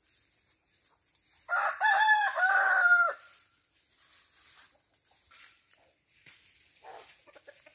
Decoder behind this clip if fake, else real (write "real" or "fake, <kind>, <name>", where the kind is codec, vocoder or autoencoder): real